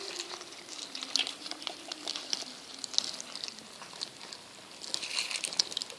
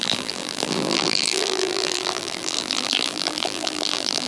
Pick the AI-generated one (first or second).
second